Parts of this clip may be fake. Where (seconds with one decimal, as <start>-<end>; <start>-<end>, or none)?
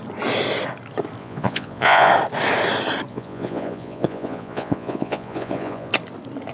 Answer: 1.2-2.1; 3.1-5.9